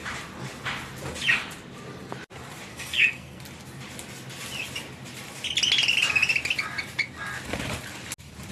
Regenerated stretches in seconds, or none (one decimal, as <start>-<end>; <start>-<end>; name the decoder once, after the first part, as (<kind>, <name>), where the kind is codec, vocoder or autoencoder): 2.7-3.4 (codec, SNAC)